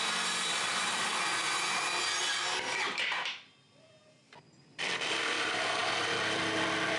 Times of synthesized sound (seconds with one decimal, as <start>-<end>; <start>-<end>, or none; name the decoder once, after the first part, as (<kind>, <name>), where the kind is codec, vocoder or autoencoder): 0.0-1.1 (vocoder, BigVGAN v2); 4.6-5.8